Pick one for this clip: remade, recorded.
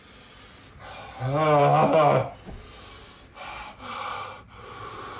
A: recorded